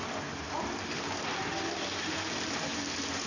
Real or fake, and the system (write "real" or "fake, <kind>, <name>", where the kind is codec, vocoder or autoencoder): real